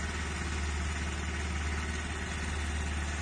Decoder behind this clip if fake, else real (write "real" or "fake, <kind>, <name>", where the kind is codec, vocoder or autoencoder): real